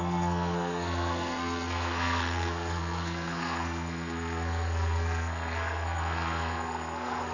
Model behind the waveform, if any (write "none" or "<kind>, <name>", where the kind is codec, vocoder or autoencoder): codec, SNAC